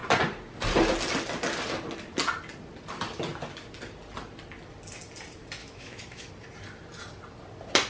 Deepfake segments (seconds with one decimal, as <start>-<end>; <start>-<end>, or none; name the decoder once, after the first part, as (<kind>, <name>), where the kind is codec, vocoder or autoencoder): 5.6-6.3 (autoencoder, DAC-VAE)